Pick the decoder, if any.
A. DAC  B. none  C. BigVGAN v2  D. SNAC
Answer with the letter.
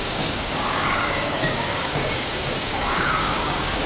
A